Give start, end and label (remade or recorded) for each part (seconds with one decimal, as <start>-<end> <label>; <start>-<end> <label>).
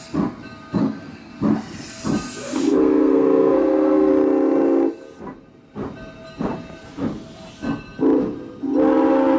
0.0-0.8 recorded; 0.8-1.3 remade; 1.3-2.4 recorded; 2.4-4.1 remade; 4.1-9.4 recorded